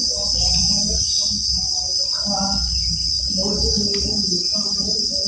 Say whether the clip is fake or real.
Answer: real